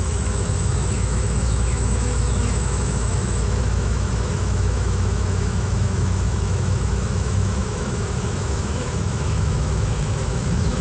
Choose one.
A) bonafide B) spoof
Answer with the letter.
B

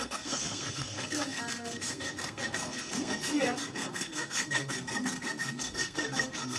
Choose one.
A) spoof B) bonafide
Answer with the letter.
A